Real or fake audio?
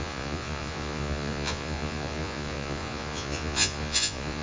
fake